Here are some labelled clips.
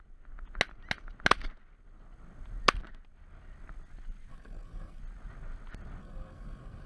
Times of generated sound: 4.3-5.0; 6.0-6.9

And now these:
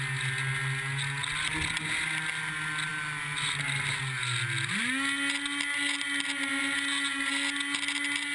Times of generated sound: none

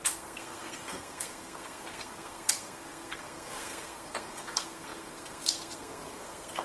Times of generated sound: 0.0-6.6